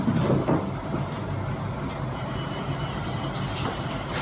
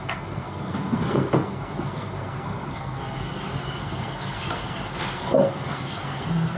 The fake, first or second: second